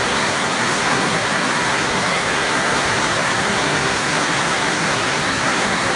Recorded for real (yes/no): no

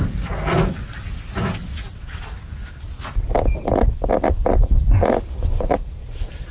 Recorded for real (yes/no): yes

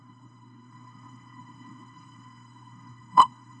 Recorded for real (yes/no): no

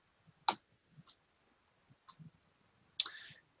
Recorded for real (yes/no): yes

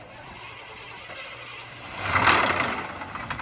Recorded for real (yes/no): yes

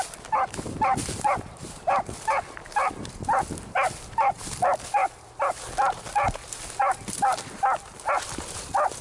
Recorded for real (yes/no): yes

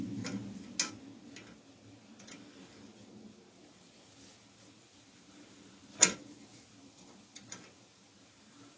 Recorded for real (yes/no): yes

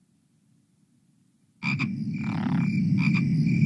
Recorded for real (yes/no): yes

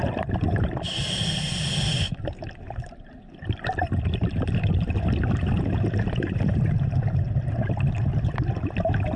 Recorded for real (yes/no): yes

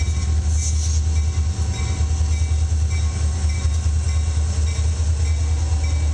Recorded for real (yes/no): yes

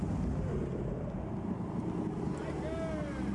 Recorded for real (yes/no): yes